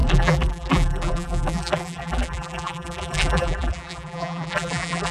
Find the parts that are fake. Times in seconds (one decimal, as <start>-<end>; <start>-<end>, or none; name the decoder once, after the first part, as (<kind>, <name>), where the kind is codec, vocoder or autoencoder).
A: 0.0-5.1 (vocoder, BigVGAN v2)